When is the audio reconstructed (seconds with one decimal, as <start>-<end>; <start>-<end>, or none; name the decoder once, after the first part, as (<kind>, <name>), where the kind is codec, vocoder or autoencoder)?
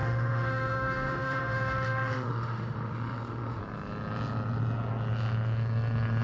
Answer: 0.0-3.6 (autoencoder, DAC-VAE)